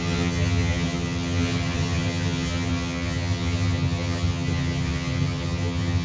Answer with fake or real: fake